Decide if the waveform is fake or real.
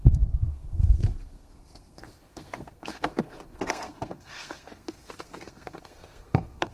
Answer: fake